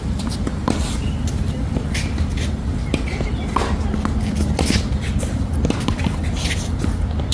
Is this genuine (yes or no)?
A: yes